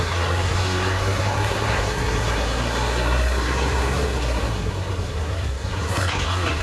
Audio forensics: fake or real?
fake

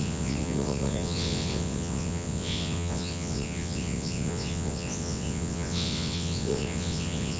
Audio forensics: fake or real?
fake